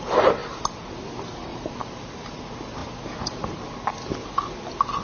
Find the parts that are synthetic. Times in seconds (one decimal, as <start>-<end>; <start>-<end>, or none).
0.4-0.9; 1.5-2.3